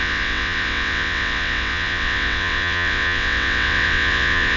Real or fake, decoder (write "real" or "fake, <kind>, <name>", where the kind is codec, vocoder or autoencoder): fake, vocoder, WaveNeXt